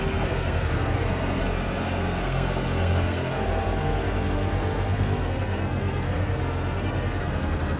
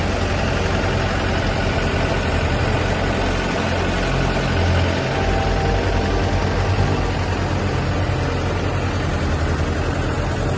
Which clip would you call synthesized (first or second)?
first